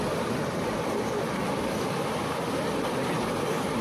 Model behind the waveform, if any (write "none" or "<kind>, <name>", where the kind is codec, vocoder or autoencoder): none